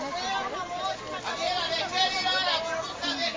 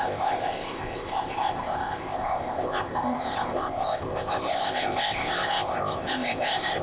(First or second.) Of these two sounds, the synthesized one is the second